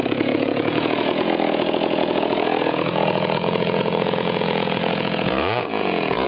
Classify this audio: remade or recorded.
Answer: remade